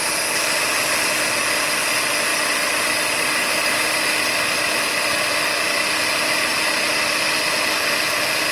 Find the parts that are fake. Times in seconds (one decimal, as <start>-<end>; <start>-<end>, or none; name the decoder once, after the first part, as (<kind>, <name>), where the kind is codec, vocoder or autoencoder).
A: none